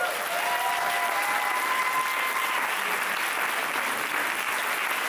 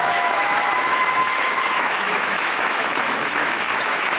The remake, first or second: second